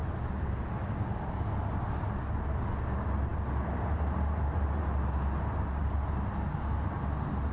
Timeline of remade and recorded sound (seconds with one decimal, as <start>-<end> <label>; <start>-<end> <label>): 0.0-7.5 recorded